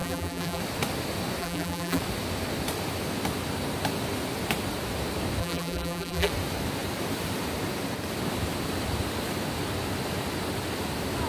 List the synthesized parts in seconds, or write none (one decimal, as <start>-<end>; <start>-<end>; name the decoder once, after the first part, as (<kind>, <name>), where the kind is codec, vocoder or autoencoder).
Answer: 0.0-0.6 (vocoder, BigVGAN v2); 1.4-2.0; 5.4-6.3